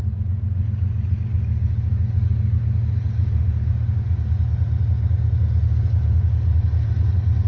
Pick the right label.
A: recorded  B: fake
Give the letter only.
A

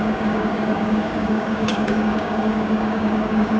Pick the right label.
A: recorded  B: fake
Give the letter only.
B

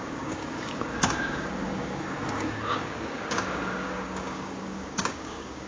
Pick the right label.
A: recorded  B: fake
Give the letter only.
B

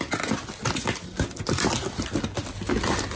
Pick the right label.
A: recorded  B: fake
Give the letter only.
A